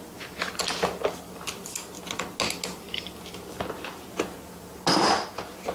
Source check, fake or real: real